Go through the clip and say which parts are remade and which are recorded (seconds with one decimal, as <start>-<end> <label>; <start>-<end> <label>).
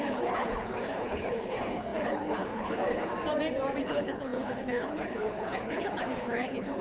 0.0-3.1 remade; 3.1-3.8 recorded; 3.8-6.8 remade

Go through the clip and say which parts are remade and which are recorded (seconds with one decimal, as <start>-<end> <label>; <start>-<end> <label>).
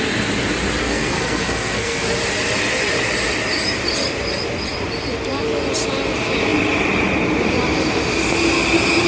0.0-0.8 recorded; 0.8-2.1 remade; 2.1-9.1 recorded